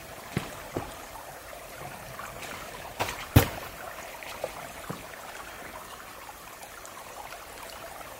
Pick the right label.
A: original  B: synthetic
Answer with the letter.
B